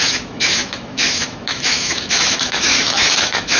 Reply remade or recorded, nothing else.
remade